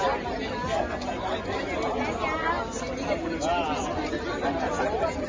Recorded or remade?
recorded